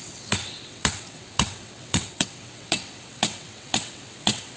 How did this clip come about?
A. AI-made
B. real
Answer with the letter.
A